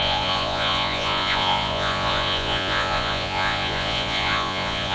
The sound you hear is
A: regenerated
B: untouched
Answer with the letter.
A